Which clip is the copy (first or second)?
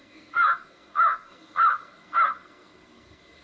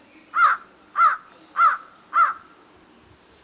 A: first